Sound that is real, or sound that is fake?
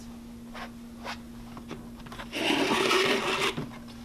real